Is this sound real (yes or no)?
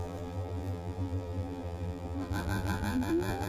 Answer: no